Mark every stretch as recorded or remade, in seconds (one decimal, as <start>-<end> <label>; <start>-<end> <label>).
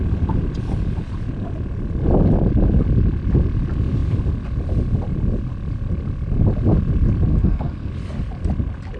0.0-7.3 recorded; 7.3-7.9 remade; 7.9-9.0 recorded